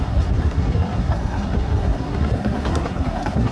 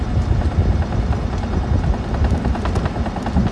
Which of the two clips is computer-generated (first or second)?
first